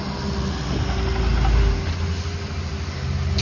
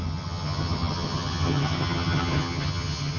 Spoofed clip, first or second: second